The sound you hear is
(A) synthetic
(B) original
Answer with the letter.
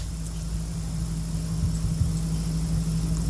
B